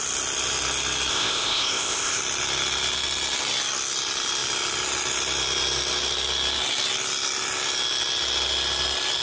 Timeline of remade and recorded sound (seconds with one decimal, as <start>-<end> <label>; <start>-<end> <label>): 0.0-1.1 recorded; 1.1-2.2 remade; 2.2-9.2 recorded

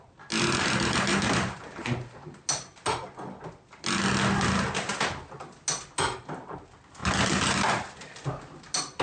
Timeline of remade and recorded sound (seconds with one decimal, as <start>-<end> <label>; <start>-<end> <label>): 0.0-1.1 recorded; 1.1-2.4 remade; 2.4-9.0 recorded

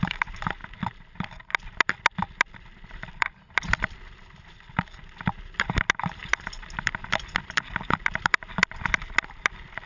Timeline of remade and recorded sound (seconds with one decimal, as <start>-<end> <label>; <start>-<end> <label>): 0.0-6.2 recorded; 6.2-8.7 remade; 8.7-9.9 recorded

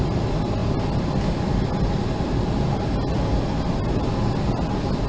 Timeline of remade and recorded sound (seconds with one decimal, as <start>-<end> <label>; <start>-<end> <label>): 0.0-5.1 recorded

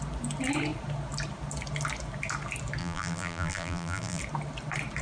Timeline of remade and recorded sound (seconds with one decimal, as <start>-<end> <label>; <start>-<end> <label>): 0.0-2.8 recorded; 2.8-4.2 remade; 4.2-5.0 recorded

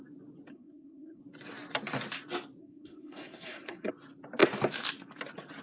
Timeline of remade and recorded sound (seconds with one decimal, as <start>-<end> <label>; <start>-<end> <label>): 0.0-0.5 recorded; 0.5-1.2 remade; 1.2-2.6 recorded; 2.6-3.9 remade; 3.9-5.6 recorded

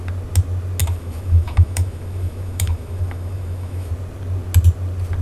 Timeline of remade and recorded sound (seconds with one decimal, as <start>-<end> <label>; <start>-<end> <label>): 0.0-0.8 recorded; 0.8-3.9 remade; 3.9-5.2 recorded